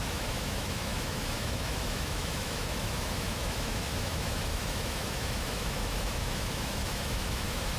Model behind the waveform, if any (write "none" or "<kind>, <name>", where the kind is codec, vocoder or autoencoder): autoencoder, DAC-VAE